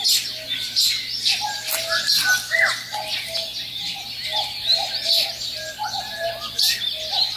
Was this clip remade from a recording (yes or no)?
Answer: no